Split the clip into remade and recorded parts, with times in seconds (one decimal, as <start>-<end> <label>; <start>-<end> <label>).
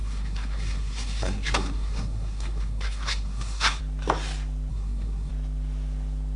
0.0-3.8 remade; 3.8-4.7 recorded; 4.7-5.3 remade; 5.3-6.4 recorded